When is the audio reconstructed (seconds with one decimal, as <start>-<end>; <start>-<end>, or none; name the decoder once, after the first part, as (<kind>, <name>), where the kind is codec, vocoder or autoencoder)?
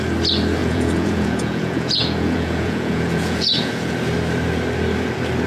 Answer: 0.6-3.9 (vocoder, Vocos)